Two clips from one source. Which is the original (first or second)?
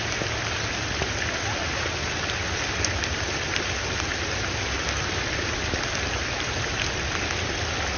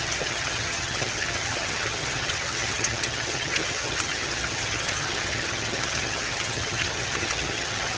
first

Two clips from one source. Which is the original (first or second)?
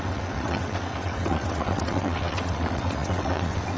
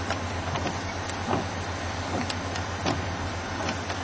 second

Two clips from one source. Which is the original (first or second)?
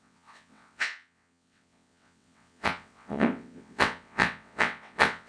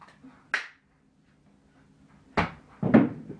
second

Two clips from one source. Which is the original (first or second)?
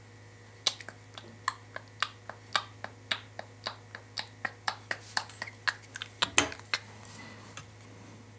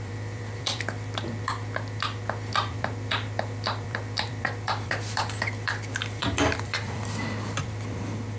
first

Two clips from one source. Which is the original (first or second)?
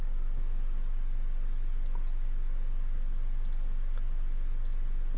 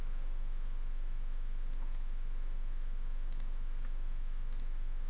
first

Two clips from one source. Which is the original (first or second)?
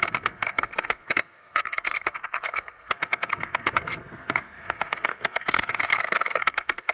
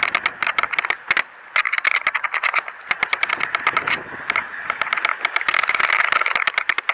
second